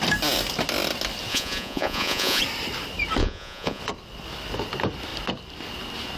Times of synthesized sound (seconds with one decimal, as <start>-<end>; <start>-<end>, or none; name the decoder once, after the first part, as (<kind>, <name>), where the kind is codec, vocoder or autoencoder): 1.3-2.4 (vocoder, Vocos); 3.2-3.8